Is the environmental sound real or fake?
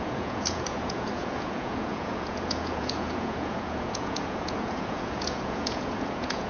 fake